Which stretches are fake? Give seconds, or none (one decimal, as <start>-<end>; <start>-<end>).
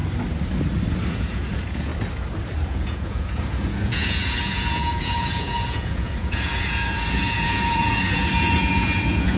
1.1-1.9; 2.7-9.4